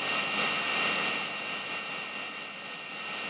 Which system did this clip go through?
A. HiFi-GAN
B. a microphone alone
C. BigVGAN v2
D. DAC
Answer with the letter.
B